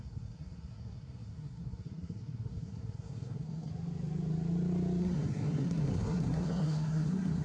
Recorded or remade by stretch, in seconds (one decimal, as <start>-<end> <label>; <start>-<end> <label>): 0.0-3.7 remade; 3.7-5.0 recorded; 5.0-7.4 remade